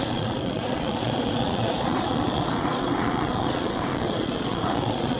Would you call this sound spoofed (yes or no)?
yes